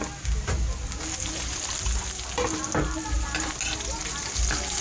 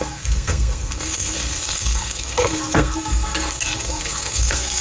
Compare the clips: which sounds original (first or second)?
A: first